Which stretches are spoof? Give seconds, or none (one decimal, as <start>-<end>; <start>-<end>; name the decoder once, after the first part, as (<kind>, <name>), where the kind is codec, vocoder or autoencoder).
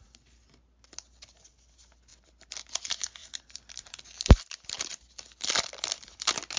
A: 3.2-3.9 (vocoder, BigVGAN v2)